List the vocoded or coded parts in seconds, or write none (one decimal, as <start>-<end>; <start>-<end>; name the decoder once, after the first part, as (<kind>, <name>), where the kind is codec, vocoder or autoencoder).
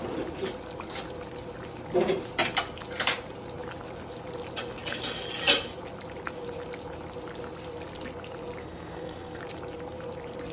8.6-9.4 (codec, SNAC)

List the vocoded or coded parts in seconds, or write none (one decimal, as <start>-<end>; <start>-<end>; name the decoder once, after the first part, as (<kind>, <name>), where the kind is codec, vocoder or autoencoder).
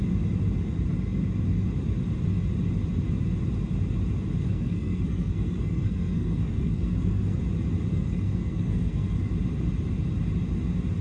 4.4-7.4 (codec, SNAC); 7.9-9.3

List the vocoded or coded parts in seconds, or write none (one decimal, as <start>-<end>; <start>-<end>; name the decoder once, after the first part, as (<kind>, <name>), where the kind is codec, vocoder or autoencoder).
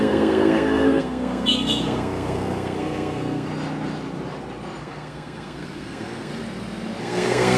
0.0-3.5 (codec, SNAC); 4.8-6.3; 7.0-7.6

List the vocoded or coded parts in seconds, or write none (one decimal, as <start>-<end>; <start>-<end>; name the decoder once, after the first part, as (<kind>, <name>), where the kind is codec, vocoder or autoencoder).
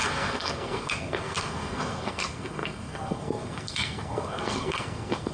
0.0-5.3 (codec, SNAC)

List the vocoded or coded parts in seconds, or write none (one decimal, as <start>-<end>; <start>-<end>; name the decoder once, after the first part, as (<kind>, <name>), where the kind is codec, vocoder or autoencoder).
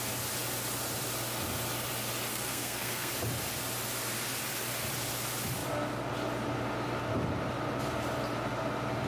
2.3-3.1 (codec, SNAC)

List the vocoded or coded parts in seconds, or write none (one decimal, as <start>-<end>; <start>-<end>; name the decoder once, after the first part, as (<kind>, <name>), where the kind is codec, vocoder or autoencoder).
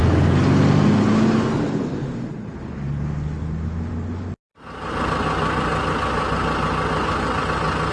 none